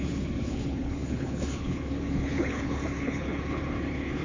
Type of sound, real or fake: fake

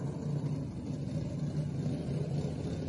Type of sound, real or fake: real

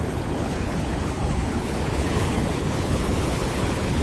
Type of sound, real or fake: fake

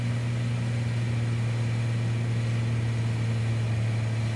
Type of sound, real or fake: real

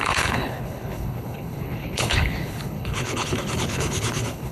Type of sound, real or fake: fake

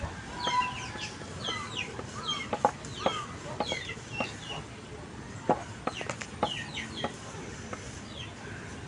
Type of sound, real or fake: real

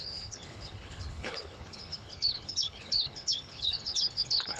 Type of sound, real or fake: fake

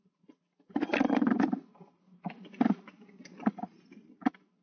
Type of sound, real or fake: real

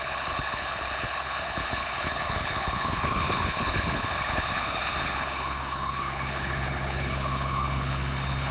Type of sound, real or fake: fake